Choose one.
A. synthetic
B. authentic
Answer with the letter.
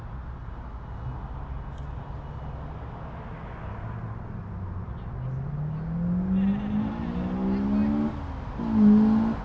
B